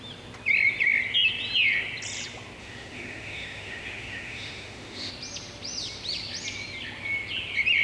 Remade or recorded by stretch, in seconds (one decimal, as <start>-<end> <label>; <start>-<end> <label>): 0.0-2.6 recorded; 2.6-5.1 remade; 5.1-7.8 recorded